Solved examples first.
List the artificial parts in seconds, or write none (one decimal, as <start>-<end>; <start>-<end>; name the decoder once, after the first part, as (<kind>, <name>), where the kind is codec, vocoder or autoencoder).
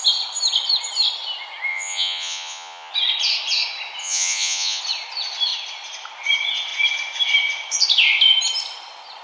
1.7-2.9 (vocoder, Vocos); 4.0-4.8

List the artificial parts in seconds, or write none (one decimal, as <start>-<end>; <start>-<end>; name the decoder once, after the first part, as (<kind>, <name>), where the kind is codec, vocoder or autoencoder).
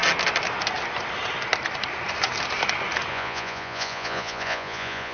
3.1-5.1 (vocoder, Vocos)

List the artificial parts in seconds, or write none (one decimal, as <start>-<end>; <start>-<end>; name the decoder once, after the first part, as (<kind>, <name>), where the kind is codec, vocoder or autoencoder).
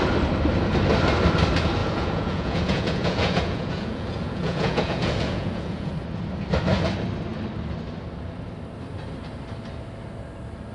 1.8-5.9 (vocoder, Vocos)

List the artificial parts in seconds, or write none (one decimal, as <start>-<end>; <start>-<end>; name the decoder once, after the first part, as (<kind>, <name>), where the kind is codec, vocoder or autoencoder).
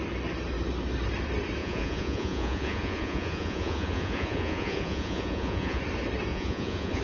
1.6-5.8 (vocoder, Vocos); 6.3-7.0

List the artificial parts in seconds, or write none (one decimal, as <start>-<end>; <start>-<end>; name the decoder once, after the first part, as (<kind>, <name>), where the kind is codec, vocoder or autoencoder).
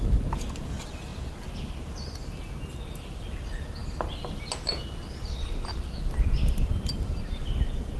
none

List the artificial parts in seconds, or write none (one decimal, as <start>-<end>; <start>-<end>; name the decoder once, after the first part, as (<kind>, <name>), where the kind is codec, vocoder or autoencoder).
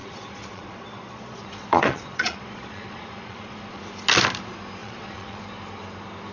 0.0-3.8 (vocoder, Vocos); 4.8-5.4